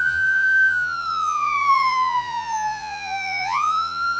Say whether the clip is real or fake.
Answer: fake